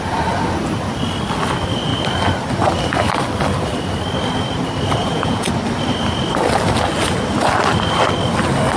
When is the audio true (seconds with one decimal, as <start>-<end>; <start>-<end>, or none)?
0.0-5.0; 5.5-8.8